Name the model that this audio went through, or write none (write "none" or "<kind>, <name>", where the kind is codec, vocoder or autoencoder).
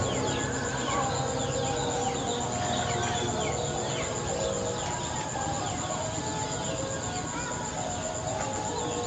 none